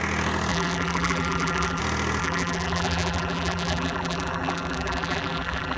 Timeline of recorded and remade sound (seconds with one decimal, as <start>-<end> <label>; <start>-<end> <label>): 0.0-0.5 recorded; 0.5-1.8 remade; 1.8-2.2 recorded; 2.2-5.8 remade